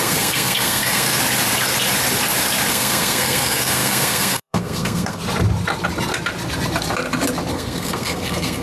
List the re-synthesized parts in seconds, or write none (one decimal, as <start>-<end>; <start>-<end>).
0.0-1.2; 2.7-5.2; 7.5-8.6